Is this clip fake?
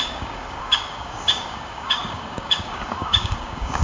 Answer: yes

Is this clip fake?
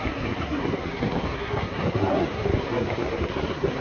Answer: yes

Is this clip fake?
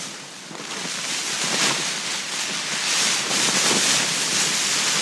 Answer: no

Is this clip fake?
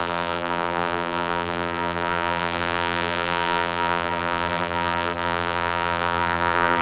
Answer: yes